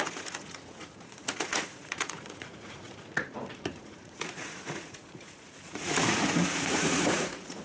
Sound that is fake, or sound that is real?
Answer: fake